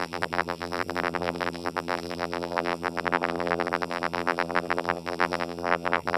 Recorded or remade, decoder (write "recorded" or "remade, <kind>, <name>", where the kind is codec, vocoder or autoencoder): remade, vocoder, BigVGAN v2